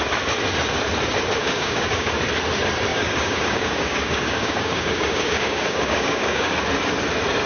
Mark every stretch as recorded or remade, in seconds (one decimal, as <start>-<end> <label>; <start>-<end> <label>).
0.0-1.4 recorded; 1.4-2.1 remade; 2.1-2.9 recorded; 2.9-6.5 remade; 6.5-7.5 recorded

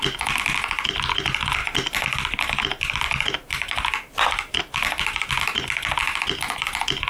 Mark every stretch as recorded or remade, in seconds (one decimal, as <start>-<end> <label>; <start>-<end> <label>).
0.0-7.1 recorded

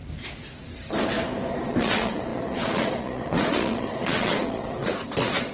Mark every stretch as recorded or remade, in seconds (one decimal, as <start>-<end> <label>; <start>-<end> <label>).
0.0-1.7 recorded; 1.7-5.5 remade

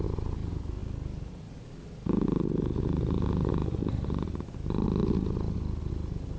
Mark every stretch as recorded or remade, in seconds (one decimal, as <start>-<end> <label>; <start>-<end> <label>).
0.0-6.4 recorded

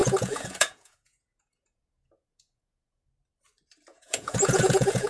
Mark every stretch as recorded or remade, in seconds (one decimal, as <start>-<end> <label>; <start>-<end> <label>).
0.0-3.1 remade; 3.1-3.9 recorded; 3.9-5.1 remade